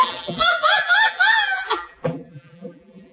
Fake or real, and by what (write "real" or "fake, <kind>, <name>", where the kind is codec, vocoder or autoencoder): fake, vocoder, BigVGAN v2